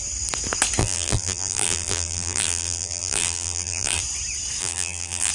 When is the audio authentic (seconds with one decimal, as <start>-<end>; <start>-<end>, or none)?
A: 0.0-0.8; 4.0-4.6